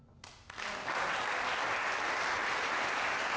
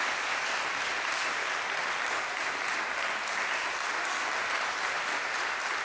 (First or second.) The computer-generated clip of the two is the second